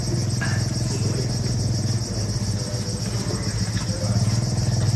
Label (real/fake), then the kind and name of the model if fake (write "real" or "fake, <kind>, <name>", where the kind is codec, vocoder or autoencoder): real